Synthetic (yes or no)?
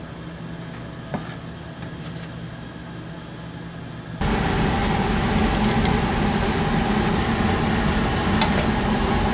no